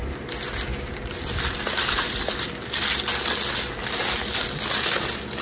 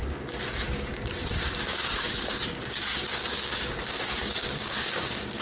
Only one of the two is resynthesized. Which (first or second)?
second